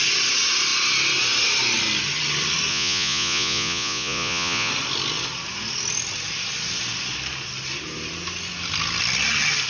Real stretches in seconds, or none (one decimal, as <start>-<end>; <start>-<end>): 0.0-2.7; 4.7-9.7